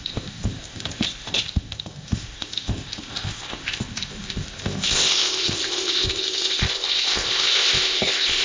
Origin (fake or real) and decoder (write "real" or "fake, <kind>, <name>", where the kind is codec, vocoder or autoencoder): fake, codec, ZipCodec